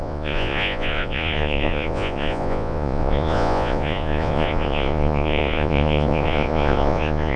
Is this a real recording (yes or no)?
no